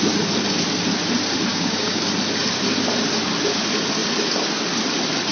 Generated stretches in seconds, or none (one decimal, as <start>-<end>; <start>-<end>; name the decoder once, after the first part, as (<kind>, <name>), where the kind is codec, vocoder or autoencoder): 1.5-2.0 (codec, DAC)